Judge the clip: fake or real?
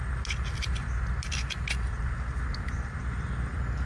real